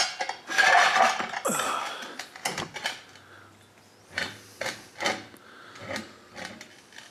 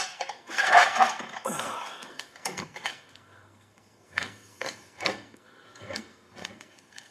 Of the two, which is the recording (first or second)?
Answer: first